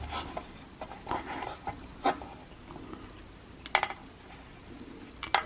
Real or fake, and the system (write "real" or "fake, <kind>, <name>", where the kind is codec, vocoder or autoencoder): real